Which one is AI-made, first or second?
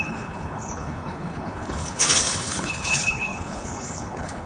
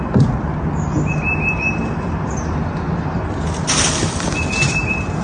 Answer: first